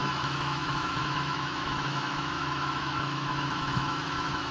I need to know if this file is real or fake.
fake